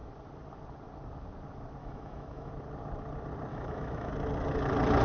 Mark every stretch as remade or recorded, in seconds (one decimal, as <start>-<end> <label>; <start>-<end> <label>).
0.0-1.8 recorded; 1.8-2.5 remade; 2.5-3.5 recorded; 3.5-4.1 remade; 4.1-5.0 recorded